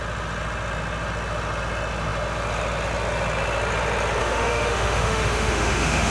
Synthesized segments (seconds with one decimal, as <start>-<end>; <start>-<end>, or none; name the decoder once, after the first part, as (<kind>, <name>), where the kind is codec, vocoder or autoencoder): 4.2-6.1 (autoencoder, DAC-VAE)